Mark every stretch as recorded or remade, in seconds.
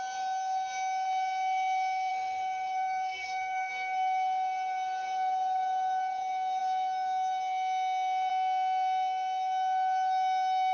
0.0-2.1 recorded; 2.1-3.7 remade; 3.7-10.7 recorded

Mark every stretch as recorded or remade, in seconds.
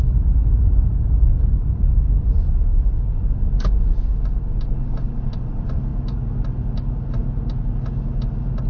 0.0-8.7 recorded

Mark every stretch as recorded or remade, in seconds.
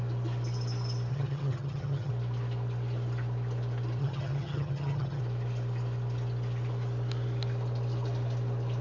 0.0-1.1 recorded; 1.1-2.1 remade; 2.1-4.0 recorded; 4.0-5.2 remade; 5.2-8.8 recorded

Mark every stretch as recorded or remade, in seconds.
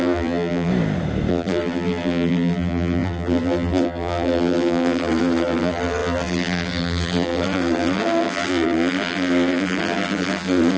0.0-0.7 remade; 0.7-1.3 recorded; 1.3-10.8 remade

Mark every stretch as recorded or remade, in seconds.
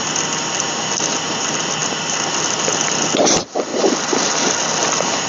0.0-5.3 recorded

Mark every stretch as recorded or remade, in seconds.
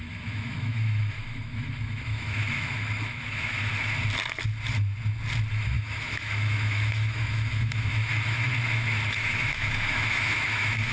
0.0-3.7 remade; 3.7-5.5 recorded; 5.5-8.5 remade; 8.5-9.1 recorded; 9.1-10.9 remade